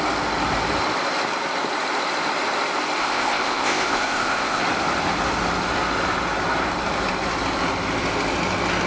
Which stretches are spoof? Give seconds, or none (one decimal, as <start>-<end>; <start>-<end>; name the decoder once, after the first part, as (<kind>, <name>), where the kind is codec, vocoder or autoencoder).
3.0-4.6 (codec, ZipCodec)